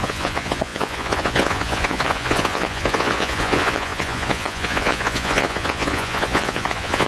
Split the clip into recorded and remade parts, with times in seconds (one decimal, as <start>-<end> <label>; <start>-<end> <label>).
0.0-7.1 remade